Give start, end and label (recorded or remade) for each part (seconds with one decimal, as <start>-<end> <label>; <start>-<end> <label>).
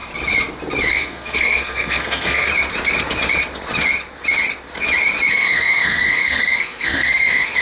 0.0-0.9 recorded; 0.9-2.5 remade; 2.5-5.3 recorded; 5.3-7.6 remade